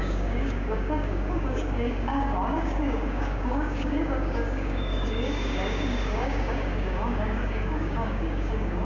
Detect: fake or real fake